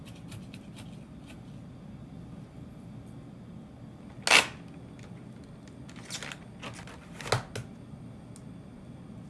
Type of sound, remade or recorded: recorded